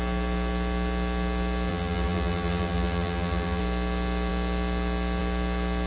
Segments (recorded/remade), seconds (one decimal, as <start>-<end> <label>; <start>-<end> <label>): 0.0-1.7 recorded; 1.7-3.6 remade; 3.6-5.9 recorded